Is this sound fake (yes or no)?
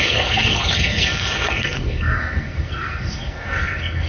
yes